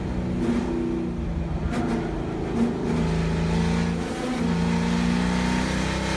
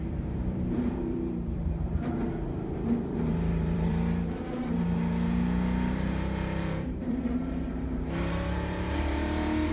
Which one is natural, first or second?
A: first